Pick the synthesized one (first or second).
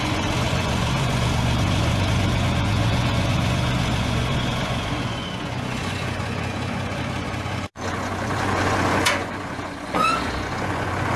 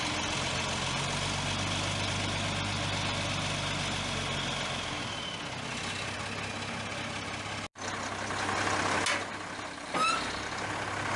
first